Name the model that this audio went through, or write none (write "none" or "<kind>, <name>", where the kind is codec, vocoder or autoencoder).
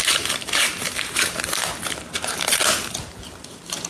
vocoder, BigVGAN v2